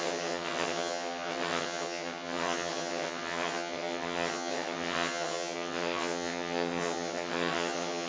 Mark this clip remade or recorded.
remade